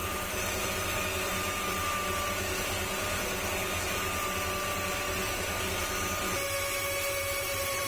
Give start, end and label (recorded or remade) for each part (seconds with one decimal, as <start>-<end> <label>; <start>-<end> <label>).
0.0-1.0 remade; 1.0-7.2 recorded; 7.2-7.9 remade